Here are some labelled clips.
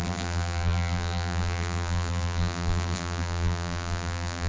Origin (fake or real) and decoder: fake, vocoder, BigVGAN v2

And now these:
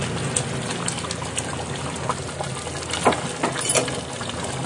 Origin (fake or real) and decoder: real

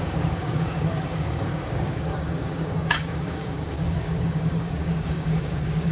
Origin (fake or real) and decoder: fake, codec, DAC